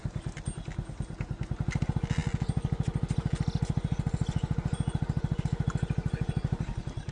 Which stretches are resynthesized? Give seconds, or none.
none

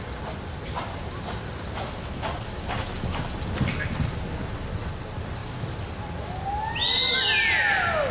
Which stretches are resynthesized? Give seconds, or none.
none

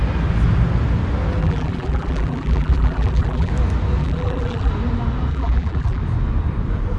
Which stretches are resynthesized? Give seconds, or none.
1.4-3.5 (vocoder, BigVGAN v2); 4.0-4.7; 5.3-6.0

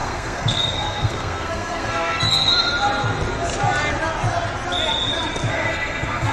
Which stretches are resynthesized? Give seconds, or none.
0.0-2.7 (codec, SNAC); 5.5-6.3

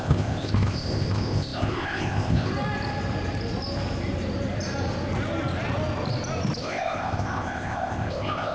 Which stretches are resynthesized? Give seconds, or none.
0.0-2.5 (codec, ZipCodec); 6.6-8.5

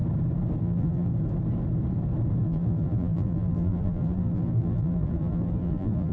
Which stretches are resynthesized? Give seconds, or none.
0.6-1.1 (vocoder, BigVGAN v2); 2.4-6.1

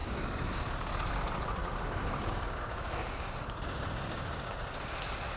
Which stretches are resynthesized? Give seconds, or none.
0.0-0.9 (codec, DAC); 1.6-4.5

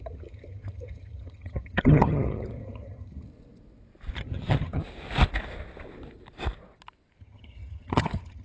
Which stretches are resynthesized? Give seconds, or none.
0.0-3.3 (vocoder, HiFi-GAN); 4.1-4.8; 7.2-8.4